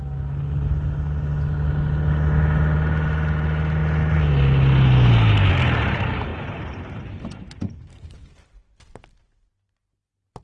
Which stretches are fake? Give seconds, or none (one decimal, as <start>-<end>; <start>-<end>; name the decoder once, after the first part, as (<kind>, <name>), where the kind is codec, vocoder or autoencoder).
6.3-8.5 (vocoder, BigVGAN v2)